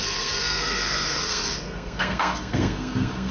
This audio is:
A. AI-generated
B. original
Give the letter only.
A